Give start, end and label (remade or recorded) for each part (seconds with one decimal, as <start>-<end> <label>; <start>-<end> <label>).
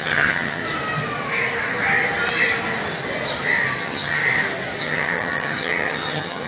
0.0-0.6 remade; 0.6-3.8 recorded; 3.8-4.2 remade; 4.2-4.8 recorded; 4.8-6.5 remade